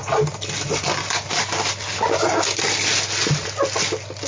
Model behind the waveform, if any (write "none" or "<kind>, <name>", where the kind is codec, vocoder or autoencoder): none